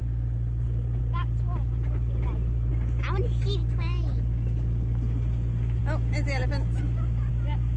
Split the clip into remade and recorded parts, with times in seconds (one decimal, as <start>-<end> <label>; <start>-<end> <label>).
0.0-1.0 remade; 1.0-2.7 recorded; 2.7-3.2 remade; 3.2-7.8 recorded